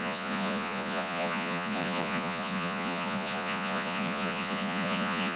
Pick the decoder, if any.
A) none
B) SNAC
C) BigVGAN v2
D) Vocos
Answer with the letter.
D